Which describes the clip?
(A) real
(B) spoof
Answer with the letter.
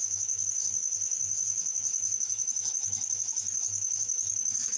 B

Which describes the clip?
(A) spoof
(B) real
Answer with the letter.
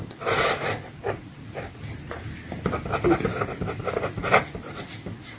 B